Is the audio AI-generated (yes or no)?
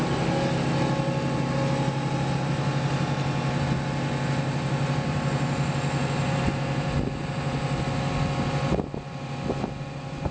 no